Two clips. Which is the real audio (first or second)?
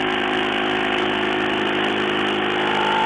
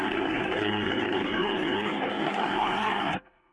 first